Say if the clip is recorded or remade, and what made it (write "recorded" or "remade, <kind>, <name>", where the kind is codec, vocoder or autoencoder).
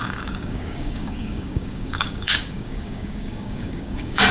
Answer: remade, codec, DAC